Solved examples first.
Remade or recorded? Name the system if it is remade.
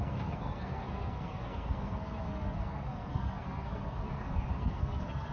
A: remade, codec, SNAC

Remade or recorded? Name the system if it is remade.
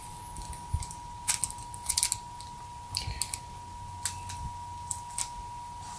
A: recorded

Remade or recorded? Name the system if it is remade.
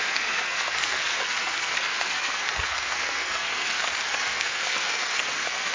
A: remade, codec, SNAC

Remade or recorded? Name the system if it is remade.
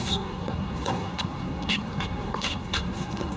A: remade, codec, SNAC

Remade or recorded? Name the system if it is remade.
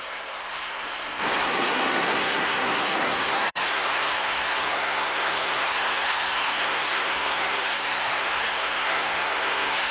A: remade, codec, SNAC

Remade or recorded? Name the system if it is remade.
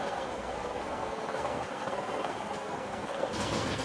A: remade, codec, SNAC